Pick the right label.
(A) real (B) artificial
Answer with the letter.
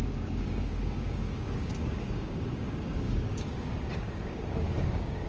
B